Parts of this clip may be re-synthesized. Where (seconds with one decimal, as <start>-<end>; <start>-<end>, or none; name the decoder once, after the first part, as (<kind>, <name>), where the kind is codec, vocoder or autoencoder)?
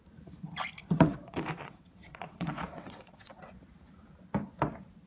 0.8-3.5 (vocoder, WaveNeXt)